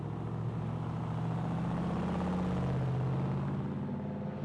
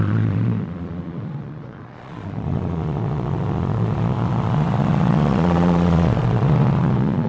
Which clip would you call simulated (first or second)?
second